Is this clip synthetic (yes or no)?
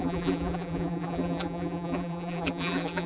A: yes